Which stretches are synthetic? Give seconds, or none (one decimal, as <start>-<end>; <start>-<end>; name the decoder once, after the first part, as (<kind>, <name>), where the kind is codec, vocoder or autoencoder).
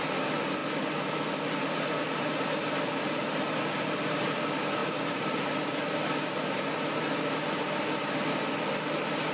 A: 4.8-5.4 (vocoder, BigVGAN v2)